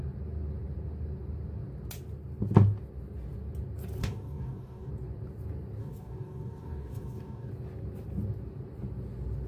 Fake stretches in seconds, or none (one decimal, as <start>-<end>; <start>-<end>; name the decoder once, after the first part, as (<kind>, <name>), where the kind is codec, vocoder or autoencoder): 4.0-4.9 (codec, DAC); 5.8-7.5